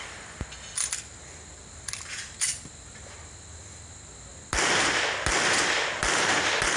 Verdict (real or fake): real